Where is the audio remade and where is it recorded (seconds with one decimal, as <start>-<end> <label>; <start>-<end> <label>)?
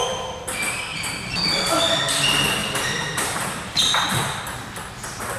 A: 0.0-0.9 recorded; 0.9-1.4 remade; 1.4-2.6 recorded; 2.6-4.4 remade; 4.4-5.4 recorded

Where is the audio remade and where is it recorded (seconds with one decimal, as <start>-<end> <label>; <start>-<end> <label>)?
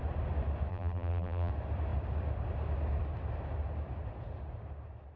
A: 0.0-0.7 recorded; 0.7-1.5 remade; 1.5-5.2 recorded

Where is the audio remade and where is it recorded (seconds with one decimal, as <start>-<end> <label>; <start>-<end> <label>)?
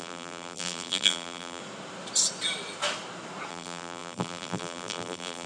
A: 0.0-1.6 remade; 1.6-3.5 recorded; 3.5-5.5 remade